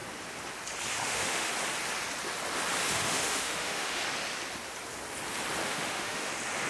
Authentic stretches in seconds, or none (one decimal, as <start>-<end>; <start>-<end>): 0.0-1.0; 1.5-2.9; 4.0-5.6; 6.3-6.7